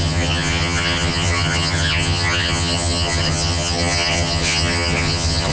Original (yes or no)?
no